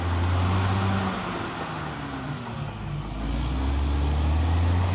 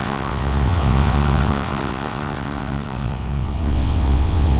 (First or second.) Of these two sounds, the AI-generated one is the second